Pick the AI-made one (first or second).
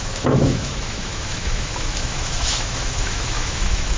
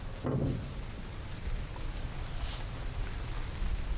first